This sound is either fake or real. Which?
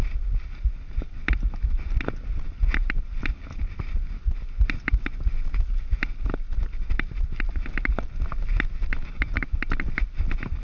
real